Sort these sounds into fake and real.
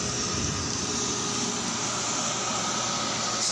real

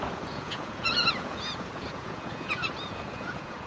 fake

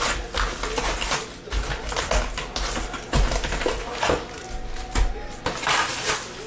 real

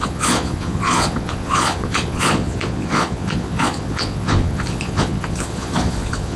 fake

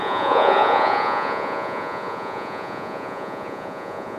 fake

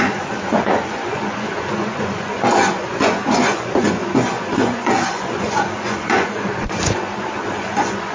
fake